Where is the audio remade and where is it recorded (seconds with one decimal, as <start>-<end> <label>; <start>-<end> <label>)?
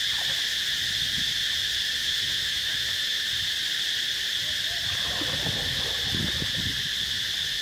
0.0-2.0 recorded; 2.0-3.2 remade; 3.2-7.6 recorded